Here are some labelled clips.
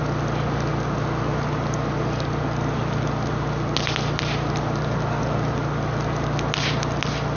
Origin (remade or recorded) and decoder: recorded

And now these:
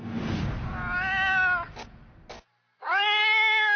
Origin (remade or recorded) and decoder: recorded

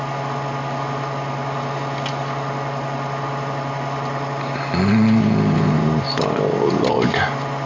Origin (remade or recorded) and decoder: recorded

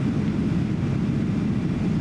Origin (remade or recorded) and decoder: recorded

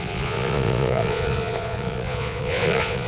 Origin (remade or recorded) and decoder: remade, vocoder, Vocos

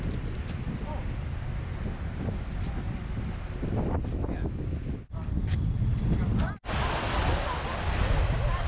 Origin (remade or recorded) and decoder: recorded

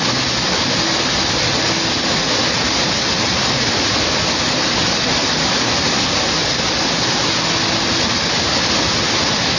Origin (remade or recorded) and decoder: recorded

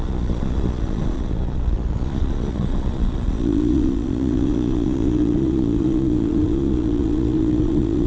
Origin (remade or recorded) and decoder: remade, vocoder, Vocos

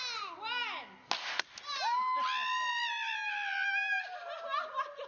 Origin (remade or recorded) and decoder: recorded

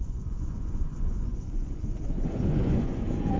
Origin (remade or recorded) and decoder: remade, vocoder, Vocos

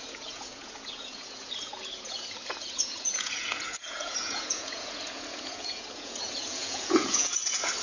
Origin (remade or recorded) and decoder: remade, vocoder, Vocos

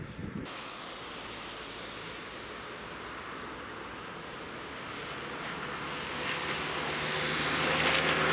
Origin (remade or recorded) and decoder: recorded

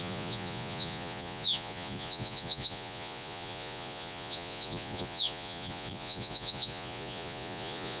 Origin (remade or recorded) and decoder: remade, vocoder, Vocos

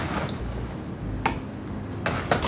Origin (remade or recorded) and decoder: recorded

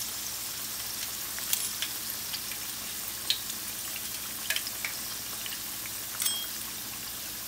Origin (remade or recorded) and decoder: recorded